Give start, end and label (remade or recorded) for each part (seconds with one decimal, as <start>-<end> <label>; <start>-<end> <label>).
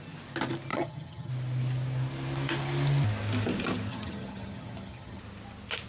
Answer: 0.0-0.7 recorded; 0.7-1.3 remade; 1.3-3.9 recorded; 3.9-5.2 remade; 5.2-5.9 recorded